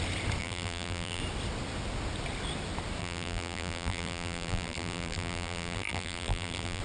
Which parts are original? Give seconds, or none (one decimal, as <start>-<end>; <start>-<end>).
0.0-0.4; 1.2-3.0

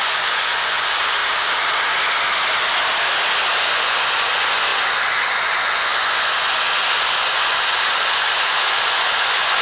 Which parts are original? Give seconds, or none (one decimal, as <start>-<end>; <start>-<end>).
1.2-3.6

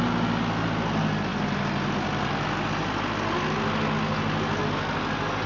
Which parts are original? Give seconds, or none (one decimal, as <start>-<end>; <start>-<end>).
0.0-5.5

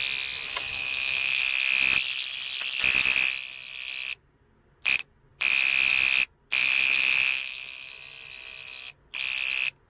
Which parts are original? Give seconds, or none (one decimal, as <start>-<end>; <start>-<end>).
0.0-0.7; 1.4-6.6; 7.9-9.9

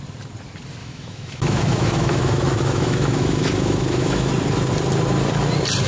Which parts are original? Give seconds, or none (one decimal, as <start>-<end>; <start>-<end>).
0.0-0.8; 4.3-5.9

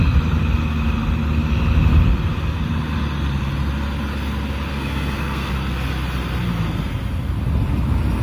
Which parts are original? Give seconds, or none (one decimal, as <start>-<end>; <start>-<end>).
0.0-4.7; 5.5-8.2

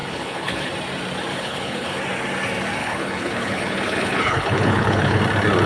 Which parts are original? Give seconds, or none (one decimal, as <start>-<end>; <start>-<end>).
0.7-1.3; 2.0-2.8; 5.2-5.7